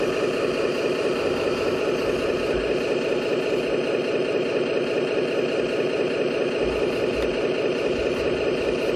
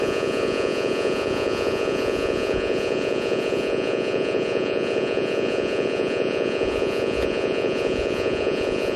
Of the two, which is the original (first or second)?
first